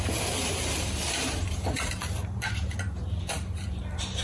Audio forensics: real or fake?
fake